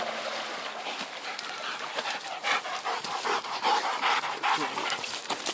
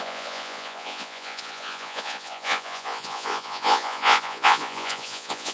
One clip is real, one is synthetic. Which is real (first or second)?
first